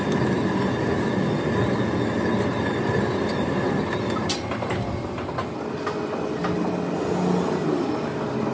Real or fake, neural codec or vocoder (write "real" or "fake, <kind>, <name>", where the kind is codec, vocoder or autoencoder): real